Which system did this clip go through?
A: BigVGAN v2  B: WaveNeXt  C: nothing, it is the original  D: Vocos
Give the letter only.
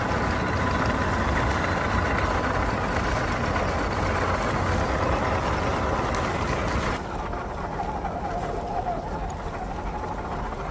C